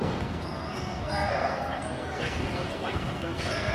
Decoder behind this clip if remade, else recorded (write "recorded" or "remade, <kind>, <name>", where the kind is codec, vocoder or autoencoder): remade, codec, SNAC